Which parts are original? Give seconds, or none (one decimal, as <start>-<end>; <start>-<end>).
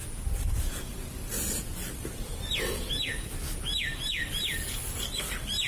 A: 0.0-1.8; 5.2-5.7